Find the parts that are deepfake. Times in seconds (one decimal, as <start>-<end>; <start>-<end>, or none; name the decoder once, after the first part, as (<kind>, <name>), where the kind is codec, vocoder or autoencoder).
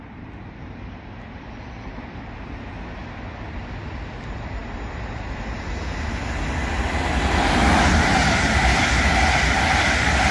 none